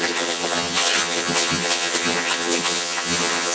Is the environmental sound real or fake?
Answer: fake